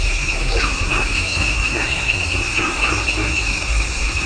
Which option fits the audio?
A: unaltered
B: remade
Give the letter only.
B